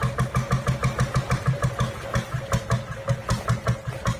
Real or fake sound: real